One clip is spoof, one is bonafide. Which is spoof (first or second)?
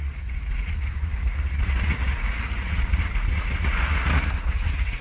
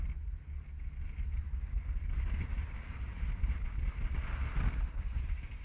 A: first